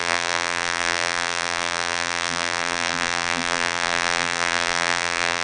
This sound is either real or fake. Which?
fake